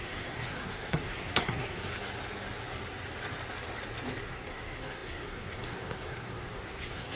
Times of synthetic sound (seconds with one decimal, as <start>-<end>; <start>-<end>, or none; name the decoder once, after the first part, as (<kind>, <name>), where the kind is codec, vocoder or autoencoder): 0.0-1.9 (codec, SNAC); 4.3-7.2